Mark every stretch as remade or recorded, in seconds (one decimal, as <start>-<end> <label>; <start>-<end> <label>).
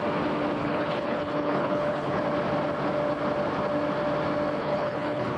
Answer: 0.0-0.6 recorded; 0.6-2.2 remade; 2.2-4.6 recorded; 4.6-5.4 remade